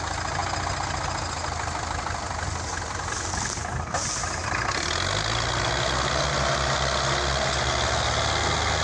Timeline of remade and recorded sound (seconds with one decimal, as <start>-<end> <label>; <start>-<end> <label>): 0.0-8.8 recorded